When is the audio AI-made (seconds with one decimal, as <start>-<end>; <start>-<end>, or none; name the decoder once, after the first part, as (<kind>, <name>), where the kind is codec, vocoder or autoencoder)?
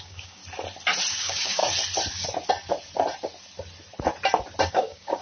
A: 0.0-0.4 (codec, DAC); 1.1-1.6; 4.7-5.2